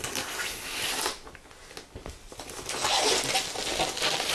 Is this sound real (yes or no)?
yes